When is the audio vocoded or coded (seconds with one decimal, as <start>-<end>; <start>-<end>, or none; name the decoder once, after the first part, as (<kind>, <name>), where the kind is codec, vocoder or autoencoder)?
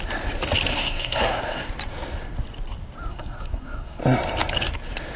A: 0.7-1.7 (codec, SNAC); 3.1-4.0